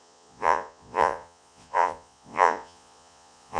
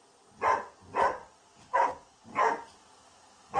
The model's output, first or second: first